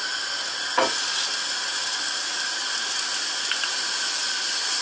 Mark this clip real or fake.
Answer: real